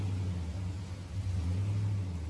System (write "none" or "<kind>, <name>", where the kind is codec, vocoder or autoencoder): none